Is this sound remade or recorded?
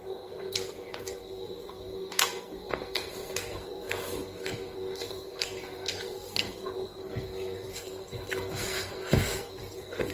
remade